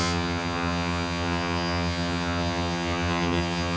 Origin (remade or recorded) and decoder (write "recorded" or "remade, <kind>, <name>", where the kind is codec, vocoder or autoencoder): remade, vocoder, HiFi-GAN